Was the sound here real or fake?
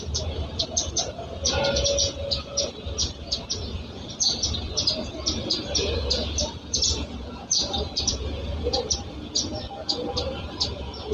fake